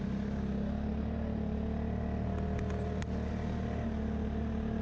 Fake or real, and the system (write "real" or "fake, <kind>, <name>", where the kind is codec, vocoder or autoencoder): real